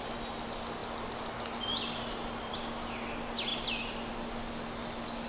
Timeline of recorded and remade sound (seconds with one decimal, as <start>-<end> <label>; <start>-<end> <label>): 0.0-5.3 recorded